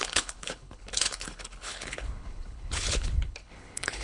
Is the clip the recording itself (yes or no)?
no